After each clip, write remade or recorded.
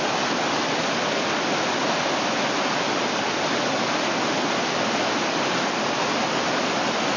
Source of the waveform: recorded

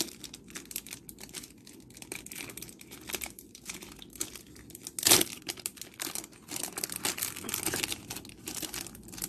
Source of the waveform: recorded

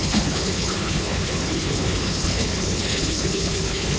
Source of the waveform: remade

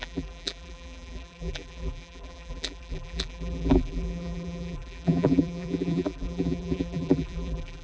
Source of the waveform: remade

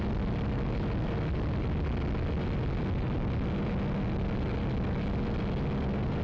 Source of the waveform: recorded